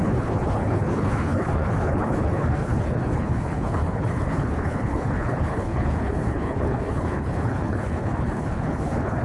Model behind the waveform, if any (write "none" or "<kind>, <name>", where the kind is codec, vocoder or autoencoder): codec, HILCodec